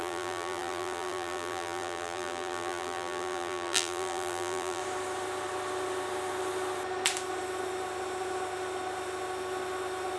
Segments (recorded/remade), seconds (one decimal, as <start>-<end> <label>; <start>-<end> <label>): 0.0-4.8 remade; 4.8-10.2 recorded